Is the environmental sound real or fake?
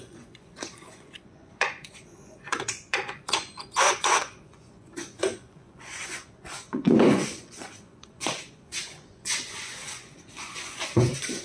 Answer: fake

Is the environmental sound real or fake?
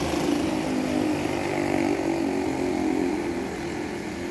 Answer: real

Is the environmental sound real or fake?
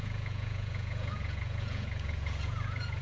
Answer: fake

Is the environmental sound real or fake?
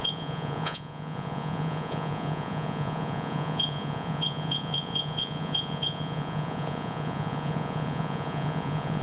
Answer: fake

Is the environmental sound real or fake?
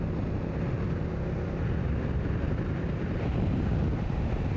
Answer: real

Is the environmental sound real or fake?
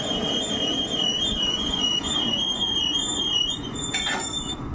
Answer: fake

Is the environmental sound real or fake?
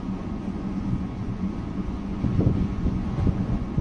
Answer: fake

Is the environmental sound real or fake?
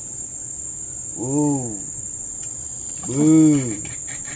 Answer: real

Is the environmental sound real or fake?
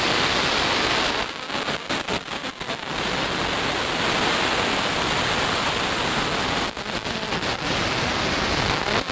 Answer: real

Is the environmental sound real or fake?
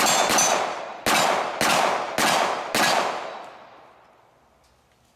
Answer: real